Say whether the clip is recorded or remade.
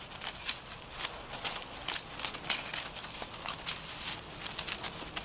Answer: recorded